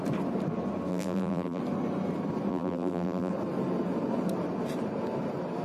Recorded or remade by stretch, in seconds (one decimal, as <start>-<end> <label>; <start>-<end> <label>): 0.0-0.9 recorded; 0.9-1.6 remade; 1.6-2.5 recorded; 2.5-3.3 remade; 3.3-5.6 recorded